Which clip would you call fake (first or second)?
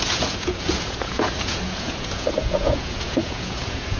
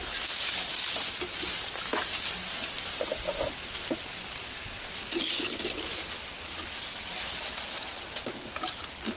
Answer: first